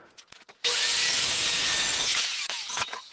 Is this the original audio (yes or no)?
no